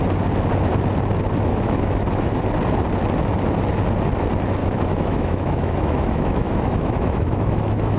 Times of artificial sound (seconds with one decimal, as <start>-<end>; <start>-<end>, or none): 1.5-2.4; 4.6-8.0